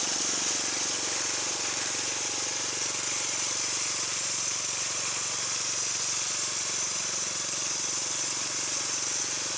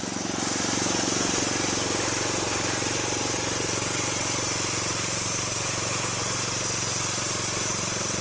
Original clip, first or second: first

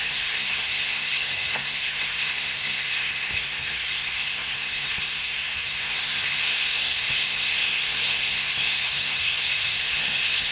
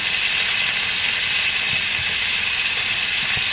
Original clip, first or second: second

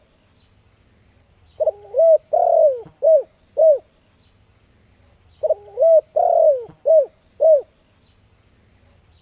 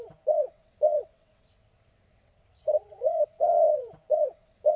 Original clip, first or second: first